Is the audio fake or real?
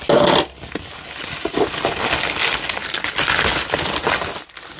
real